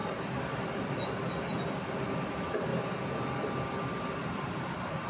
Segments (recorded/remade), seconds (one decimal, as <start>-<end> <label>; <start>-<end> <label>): 0.0-1.1 remade; 1.1-4.2 recorded; 4.2-5.1 remade